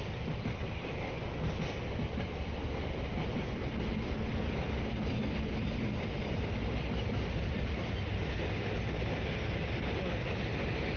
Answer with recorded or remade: recorded